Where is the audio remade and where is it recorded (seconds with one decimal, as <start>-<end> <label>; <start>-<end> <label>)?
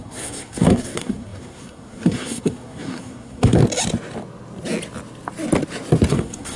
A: 0.0-3.6 remade; 3.6-6.1 recorded; 6.1-6.6 remade